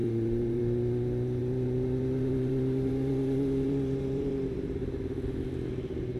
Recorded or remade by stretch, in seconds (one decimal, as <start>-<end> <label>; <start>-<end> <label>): 0.0-0.6 remade; 0.6-1.4 recorded; 1.4-5.0 remade; 5.0-6.2 recorded